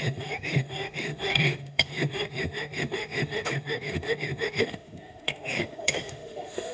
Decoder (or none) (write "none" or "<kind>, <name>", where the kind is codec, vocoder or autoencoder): autoencoder, DAC-VAE